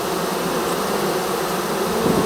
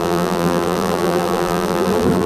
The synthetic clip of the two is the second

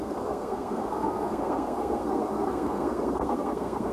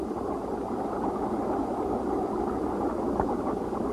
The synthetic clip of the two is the first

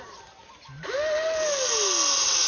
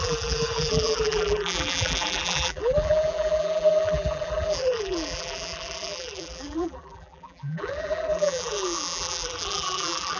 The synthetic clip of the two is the second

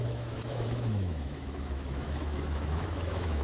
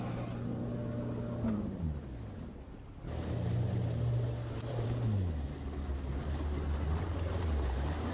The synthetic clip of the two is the first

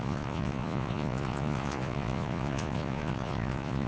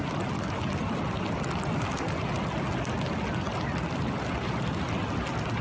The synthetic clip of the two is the first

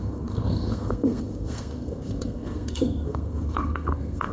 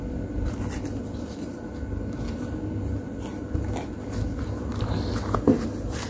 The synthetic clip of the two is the first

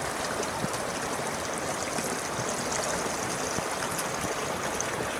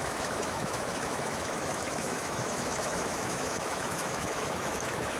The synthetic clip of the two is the second